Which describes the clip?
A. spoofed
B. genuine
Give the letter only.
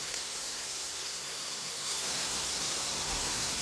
A